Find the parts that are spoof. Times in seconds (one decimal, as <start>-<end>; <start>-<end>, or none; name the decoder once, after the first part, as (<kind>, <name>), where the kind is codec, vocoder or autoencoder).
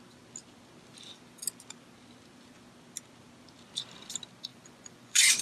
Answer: 4.5-5.4 (vocoder, Vocos)